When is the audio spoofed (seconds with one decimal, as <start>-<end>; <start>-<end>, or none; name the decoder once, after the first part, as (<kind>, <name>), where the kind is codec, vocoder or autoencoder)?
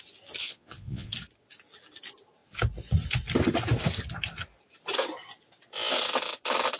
0.4-1.1 (vocoder, Vocos)